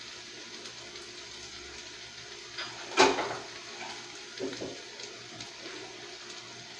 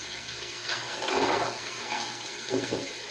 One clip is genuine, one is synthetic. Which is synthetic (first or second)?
second